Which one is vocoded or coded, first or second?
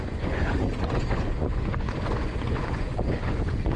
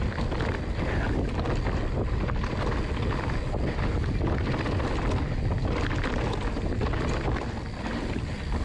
first